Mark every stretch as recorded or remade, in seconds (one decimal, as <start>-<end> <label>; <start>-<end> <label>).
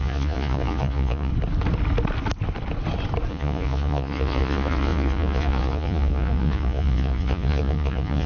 0.0-1.3 remade; 1.3-3.3 recorded; 3.3-8.3 remade